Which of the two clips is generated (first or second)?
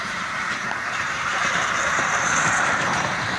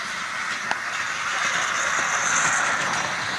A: first